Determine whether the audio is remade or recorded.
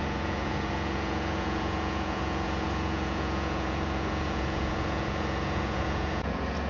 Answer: remade